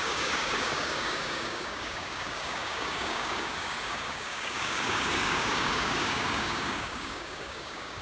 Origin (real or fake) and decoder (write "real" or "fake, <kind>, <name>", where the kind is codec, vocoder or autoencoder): fake, codec, DAC